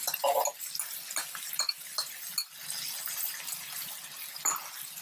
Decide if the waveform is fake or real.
real